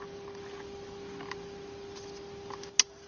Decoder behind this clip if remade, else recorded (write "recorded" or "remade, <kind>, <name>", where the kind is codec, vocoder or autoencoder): recorded